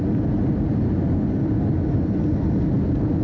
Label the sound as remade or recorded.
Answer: recorded